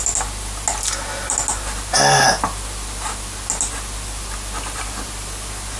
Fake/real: real